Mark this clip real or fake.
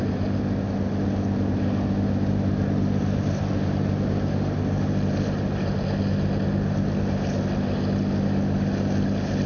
real